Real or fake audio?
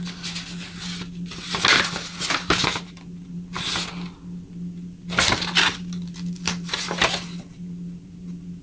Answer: real